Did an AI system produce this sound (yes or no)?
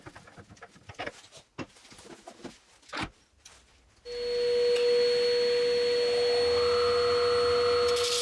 no